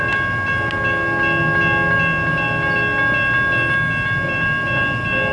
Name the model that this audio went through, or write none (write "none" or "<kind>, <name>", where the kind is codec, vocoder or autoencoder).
none